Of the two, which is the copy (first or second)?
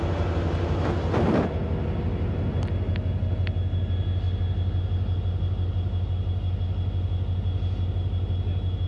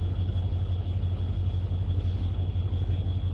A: second